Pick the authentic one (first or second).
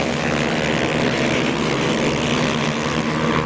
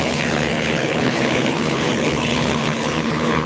first